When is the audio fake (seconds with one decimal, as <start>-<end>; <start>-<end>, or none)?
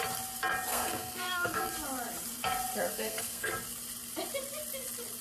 0.7-1.7; 2.9-3.5